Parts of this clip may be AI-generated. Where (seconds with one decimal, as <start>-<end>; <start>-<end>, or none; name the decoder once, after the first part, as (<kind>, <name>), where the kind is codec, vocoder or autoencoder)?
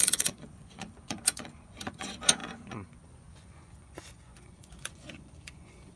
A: 0.0-6.0 (vocoder, Vocos)